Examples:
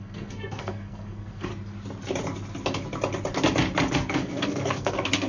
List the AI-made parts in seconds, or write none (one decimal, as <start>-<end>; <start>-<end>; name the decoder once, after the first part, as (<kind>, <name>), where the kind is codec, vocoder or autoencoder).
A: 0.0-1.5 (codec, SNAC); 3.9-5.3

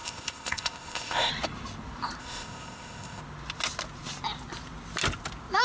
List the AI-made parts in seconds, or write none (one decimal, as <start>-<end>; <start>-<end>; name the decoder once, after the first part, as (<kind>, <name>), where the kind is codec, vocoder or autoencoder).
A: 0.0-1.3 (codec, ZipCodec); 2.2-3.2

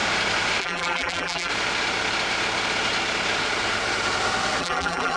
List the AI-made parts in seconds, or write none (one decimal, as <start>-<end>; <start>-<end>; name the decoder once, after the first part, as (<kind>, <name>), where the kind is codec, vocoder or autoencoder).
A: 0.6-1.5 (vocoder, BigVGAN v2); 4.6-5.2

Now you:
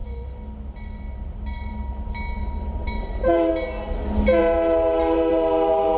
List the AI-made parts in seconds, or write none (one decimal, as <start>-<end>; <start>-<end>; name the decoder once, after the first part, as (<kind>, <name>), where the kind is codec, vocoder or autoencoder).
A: 2.4-3.5 (vocoder, BigVGAN v2); 4.4-6.0